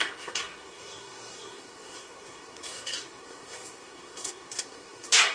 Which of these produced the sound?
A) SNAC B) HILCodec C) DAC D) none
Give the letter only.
A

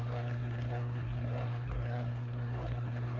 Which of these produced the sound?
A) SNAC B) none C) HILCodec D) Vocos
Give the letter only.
A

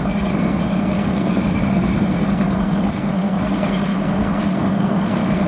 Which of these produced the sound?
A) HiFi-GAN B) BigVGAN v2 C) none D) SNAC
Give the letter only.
D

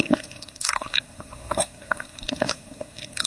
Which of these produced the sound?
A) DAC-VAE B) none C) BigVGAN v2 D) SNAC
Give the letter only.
D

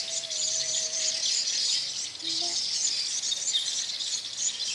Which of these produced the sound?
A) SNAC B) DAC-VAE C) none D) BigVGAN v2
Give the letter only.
C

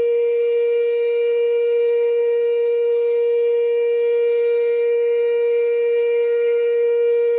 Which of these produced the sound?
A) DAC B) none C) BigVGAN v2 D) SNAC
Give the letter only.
D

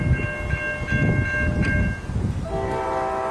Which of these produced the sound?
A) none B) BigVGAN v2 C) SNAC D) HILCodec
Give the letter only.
A